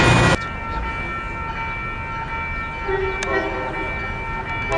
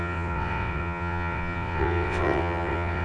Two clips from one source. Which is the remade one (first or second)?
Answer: second